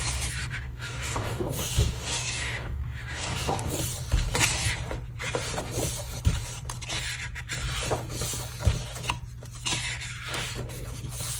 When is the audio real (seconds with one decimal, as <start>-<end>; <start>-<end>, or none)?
0.0-0.4; 3.8-11.4